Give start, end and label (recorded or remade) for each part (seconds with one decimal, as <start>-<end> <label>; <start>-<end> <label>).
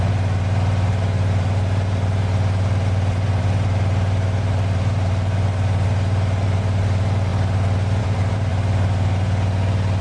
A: 0.0-7.3 remade; 7.3-8.0 recorded; 8.0-8.5 remade; 8.5-10.0 recorded